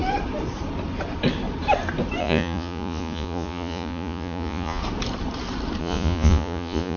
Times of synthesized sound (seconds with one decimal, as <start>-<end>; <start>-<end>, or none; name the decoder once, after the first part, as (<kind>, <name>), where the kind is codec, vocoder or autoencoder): 2.2-4.8 (vocoder, Vocos); 5.8-7.0